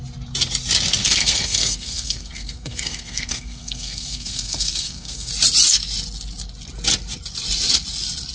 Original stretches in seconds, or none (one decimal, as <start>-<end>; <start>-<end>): 0.0-1.0; 5.3-8.3